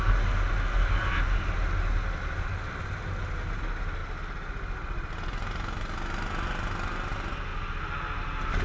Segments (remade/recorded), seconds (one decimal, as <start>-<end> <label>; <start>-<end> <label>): 0.0-8.6 recorded